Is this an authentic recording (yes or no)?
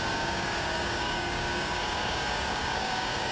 no